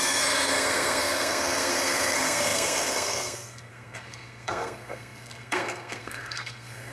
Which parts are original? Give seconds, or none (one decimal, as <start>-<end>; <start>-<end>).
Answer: none